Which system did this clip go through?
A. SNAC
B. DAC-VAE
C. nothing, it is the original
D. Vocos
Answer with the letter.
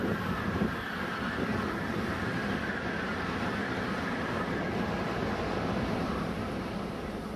C